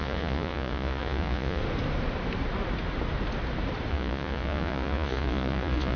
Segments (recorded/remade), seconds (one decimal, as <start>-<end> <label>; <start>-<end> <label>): 0.0-1.6 remade; 1.6-3.9 recorded; 3.9-6.0 remade